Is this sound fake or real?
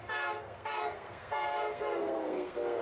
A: fake